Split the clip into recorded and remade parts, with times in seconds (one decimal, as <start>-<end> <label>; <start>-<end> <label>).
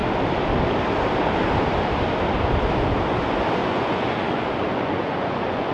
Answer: 0.0-3.6 recorded; 3.6-5.7 remade